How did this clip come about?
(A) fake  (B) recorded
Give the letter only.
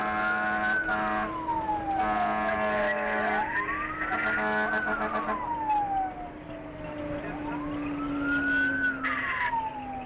B